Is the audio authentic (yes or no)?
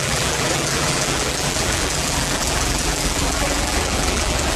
no